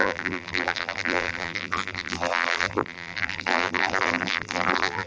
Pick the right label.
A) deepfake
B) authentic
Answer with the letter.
A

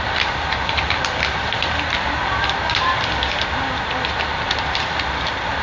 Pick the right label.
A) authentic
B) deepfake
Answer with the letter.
B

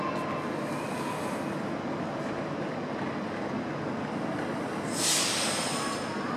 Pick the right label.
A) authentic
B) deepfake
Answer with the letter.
A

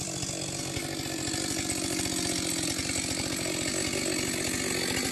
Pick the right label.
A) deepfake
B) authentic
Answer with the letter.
B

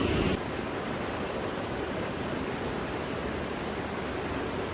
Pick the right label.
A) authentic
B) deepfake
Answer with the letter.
A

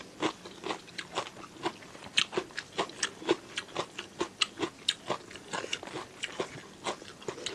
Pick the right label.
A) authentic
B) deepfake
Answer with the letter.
A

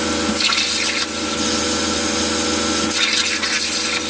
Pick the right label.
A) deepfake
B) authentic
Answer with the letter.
B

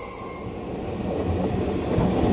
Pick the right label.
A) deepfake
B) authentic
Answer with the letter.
B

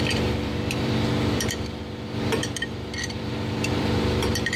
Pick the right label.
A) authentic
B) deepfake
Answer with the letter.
B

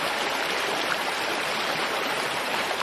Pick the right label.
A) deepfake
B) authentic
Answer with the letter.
A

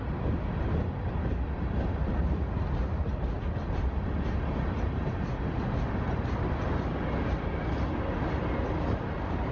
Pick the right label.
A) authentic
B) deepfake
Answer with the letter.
A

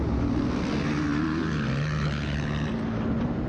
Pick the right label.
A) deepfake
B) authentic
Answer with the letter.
B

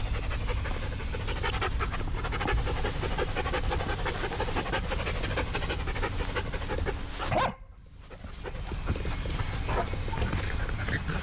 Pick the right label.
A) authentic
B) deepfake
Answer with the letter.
A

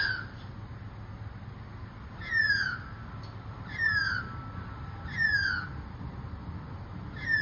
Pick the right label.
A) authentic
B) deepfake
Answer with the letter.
A